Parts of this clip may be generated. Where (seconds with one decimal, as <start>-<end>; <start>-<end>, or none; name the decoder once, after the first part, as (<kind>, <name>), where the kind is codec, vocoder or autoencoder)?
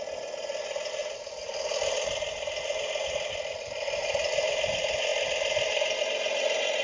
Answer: none